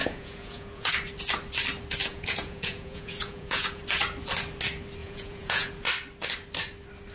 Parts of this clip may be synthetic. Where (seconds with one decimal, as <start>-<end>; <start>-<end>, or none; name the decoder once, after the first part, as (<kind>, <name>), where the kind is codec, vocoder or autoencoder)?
0.0-0.9 (vocoder, Vocos); 2.0-3.8; 5.0-5.7